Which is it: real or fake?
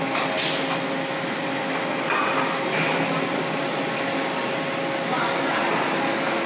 real